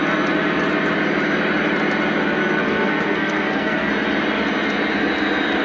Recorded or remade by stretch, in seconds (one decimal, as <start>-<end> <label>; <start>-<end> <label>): 0.0-2.4 recorded; 2.4-3.9 remade; 3.9-5.6 recorded